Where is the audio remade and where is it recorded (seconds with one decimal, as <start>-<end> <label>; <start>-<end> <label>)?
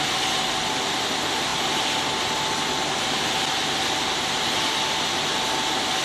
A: 0.0-6.0 recorded